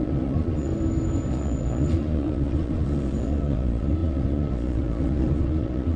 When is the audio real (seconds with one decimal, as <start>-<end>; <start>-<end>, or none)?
0.7-1.3